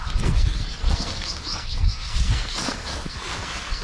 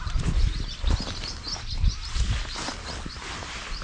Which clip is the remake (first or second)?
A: first